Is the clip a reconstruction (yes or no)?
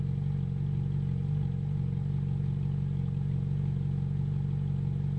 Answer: no